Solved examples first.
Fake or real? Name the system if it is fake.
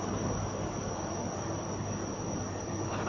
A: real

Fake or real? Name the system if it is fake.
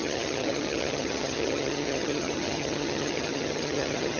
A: fake, vocoder, HiFi-GAN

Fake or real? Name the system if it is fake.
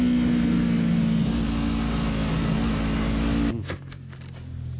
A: real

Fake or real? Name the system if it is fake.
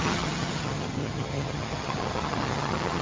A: fake, vocoder, HiFi-GAN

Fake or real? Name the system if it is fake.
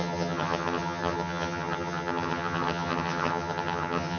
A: fake, vocoder, HiFi-GAN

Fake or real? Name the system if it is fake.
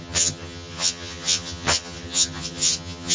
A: fake, vocoder, HiFi-GAN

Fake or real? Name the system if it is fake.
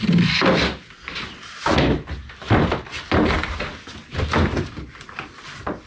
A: real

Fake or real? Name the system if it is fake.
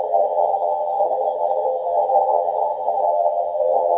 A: fake, vocoder, HiFi-GAN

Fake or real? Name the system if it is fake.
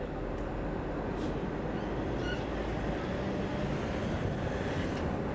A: real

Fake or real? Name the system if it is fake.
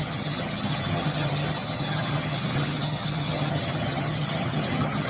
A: fake, vocoder, HiFi-GAN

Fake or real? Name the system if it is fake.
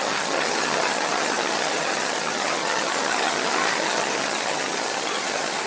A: fake, vocoder, HiFi-GAN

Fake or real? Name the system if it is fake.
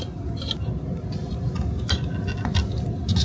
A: real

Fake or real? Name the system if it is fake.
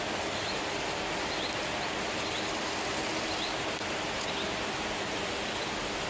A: real